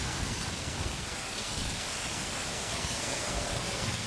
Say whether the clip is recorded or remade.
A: remade